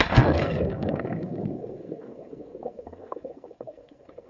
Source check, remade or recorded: remade